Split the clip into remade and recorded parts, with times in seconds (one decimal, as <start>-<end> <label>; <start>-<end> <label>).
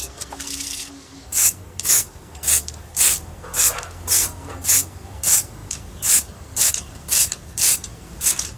0.0-8.6 remade